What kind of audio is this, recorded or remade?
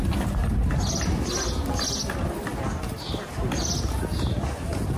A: recorded